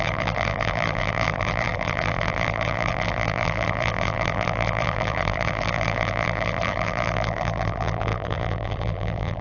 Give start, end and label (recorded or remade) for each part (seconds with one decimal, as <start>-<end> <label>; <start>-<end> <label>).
0.0-9.4 remade